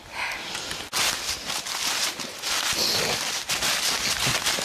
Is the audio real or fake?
real